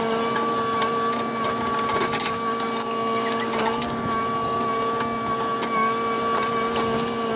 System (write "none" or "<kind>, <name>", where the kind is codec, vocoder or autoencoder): none